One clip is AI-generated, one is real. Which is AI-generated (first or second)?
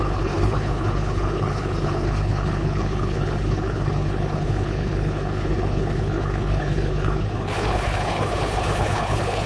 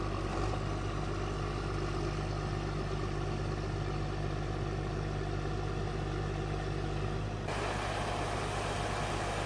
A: first